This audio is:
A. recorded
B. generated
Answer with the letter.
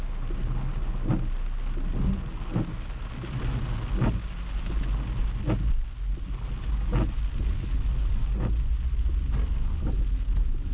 A